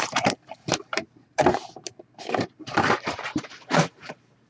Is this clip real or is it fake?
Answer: fake